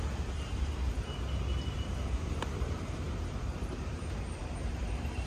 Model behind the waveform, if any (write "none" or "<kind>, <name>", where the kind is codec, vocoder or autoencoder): vocoder, BigVGAN v2